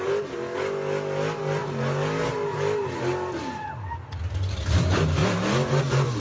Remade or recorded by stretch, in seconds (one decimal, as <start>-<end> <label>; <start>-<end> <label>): 0.0-6.2 recorded